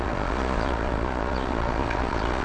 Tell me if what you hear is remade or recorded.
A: remade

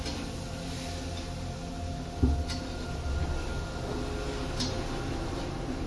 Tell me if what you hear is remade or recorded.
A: recorded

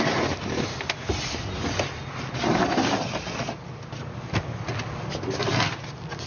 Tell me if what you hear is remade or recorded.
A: recorded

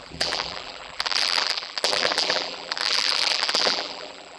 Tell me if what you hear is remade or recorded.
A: remade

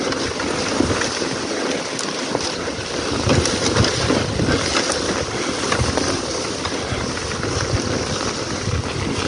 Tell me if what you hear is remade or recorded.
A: recorded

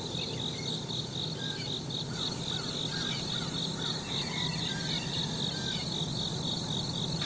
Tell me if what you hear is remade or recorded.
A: recorded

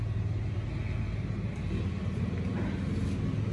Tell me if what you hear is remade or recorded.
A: recorded